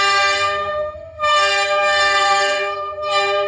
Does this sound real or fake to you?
fake